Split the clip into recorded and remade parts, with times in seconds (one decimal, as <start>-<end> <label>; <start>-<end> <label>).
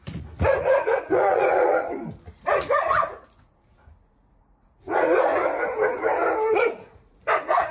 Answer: 0.0-1.9 remade; 1.9-2.5 recorded; 2.5-5.3 remade; 5.3-6.5 recorded; 6.5-7.7 remade